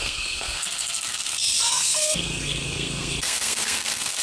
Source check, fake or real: fake